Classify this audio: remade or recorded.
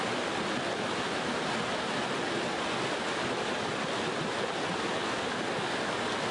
recorded